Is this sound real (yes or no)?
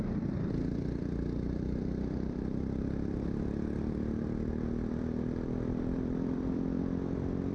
no